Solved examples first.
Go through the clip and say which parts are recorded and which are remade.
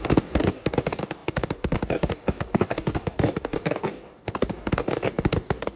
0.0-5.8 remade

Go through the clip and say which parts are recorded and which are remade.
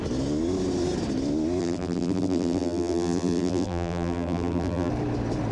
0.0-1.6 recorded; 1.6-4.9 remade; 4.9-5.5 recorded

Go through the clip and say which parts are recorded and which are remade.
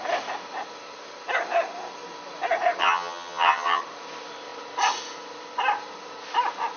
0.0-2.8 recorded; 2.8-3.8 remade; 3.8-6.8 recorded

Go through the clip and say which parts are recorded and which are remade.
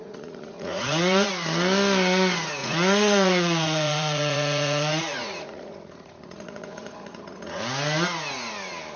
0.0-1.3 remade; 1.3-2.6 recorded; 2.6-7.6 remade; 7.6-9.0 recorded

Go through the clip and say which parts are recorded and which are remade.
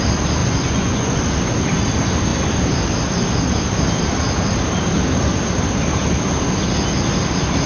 0.0-0.4 recorded; 0.4-1.2 remade; 1.2-7.7 recorded